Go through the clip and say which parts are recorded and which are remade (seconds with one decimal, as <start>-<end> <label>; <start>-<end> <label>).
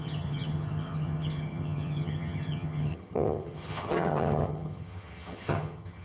0.0-6.0 remade